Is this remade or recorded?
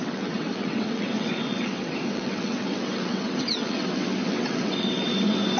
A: remade